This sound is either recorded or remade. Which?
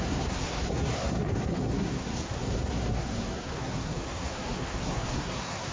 remade